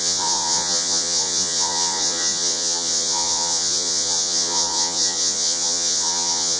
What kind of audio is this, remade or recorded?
remade